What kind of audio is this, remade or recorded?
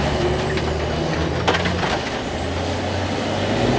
recorded